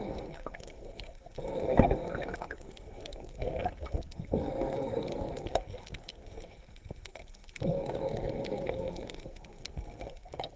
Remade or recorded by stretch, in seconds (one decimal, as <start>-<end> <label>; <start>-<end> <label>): 0.0-10.6 remade